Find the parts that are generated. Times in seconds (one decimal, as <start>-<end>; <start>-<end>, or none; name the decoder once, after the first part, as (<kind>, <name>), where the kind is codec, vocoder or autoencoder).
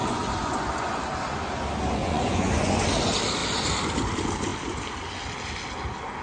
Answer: 0.0-1.0 (vocoder, Vocos); 2.0-2.8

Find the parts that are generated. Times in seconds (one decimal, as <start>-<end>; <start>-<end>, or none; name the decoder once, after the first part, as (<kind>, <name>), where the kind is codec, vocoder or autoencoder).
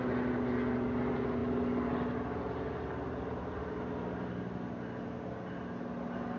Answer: none